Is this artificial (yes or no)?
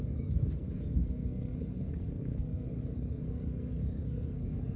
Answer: yes